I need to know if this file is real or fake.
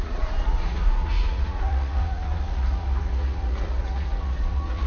fake